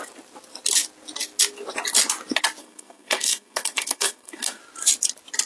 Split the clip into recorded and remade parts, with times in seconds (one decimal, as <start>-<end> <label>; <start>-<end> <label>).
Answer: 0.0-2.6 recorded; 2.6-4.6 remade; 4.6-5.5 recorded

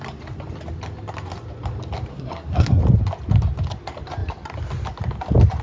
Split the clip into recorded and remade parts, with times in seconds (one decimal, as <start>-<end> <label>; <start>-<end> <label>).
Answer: 0.0-2.1 recorded; 2.1-2.8 remade; 2.8-5.6 recorded

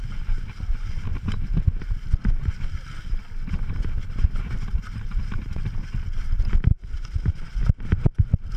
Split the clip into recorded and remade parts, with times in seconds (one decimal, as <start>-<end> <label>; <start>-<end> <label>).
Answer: 0.0-6.7 recorded; 6.7-7.6 remade; 7.6-8.6 recorded